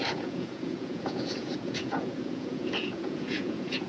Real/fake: fake